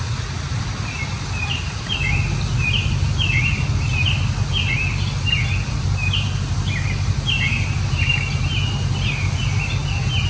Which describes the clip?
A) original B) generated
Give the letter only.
A